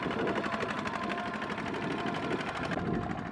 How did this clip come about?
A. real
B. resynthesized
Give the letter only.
A